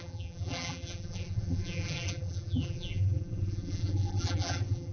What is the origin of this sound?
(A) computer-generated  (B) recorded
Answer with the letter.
A